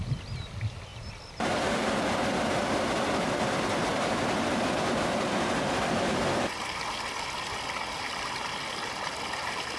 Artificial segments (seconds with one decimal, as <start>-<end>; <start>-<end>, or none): none